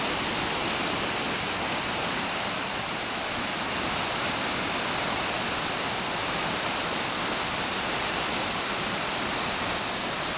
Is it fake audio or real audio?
fake